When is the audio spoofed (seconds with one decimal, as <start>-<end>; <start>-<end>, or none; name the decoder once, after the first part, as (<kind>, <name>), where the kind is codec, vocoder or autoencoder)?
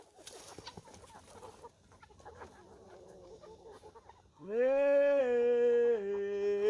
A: 4.3-5.2 (codec, SNAC)